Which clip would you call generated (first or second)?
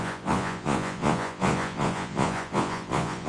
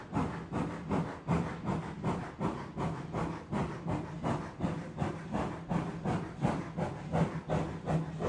first